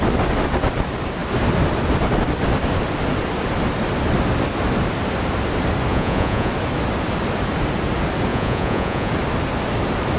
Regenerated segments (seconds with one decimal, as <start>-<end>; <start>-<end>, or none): 5.9-6.5; 8.3-9.1